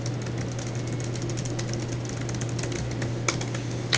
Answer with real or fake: real